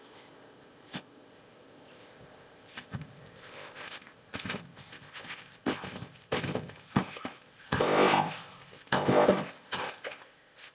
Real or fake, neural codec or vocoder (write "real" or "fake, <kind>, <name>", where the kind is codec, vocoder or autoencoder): fake, codec, ZipCodec